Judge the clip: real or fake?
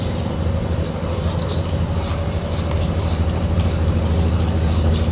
real